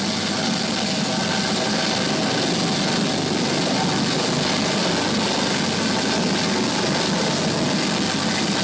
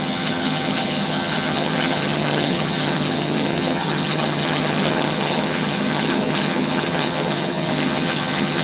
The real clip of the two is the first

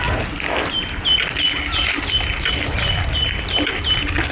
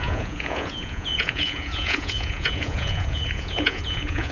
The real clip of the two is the first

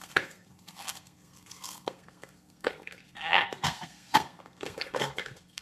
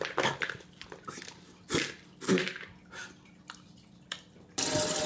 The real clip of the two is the second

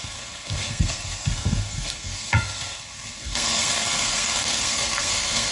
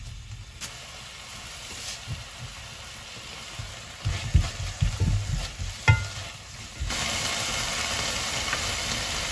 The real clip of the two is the second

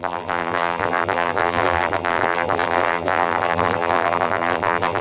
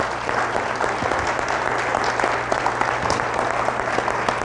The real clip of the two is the second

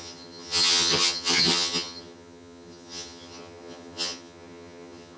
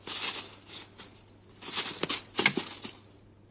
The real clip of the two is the second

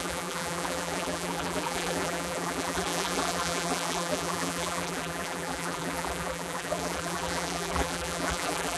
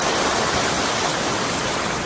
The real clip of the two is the second